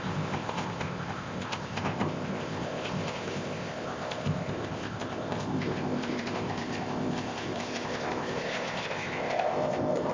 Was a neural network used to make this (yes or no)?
yes